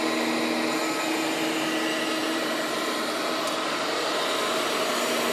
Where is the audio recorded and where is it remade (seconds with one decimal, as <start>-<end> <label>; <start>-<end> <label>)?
0.0-2.2 recorded; 2.2-4.2 remade; 4.2-5.3 recorded